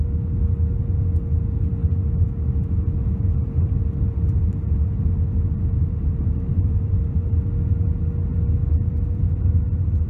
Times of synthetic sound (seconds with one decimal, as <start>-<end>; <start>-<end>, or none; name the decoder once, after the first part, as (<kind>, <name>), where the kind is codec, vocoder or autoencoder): 6.0-7.3 (vocoder, BigVGAN v2)